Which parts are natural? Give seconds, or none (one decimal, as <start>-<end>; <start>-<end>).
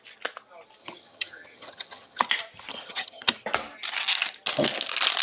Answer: 0.0-0.8; 2.3-2.7; 3.3-5.2